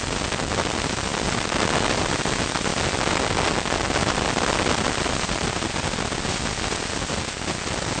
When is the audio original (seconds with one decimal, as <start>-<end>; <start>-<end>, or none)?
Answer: 0.0-8.0